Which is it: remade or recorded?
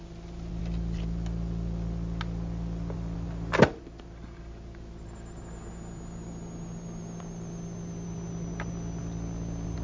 recorded